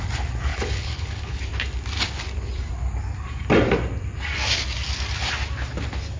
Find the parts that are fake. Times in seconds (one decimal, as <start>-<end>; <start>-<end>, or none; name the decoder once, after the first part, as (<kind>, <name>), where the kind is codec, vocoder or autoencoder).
0.5-1.4 (codec, HILCodec)